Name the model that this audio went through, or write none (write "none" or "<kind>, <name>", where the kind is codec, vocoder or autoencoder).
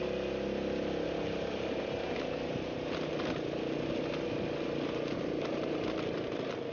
none